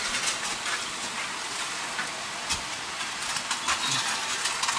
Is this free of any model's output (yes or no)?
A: yes